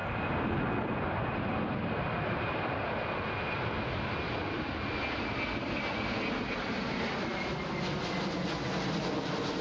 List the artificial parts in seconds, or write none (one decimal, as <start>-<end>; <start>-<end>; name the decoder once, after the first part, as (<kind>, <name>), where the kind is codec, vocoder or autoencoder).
0.0-0.6 (vocoder, BigVGAN v2)

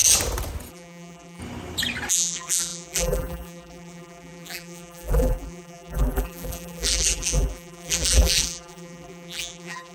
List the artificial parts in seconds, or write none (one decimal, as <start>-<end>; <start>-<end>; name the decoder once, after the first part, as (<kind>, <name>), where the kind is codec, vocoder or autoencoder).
0.7-1.4 (vocoder, BigVGAN v2); 2.1-9.9